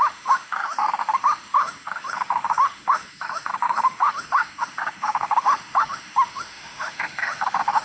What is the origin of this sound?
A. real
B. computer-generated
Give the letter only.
B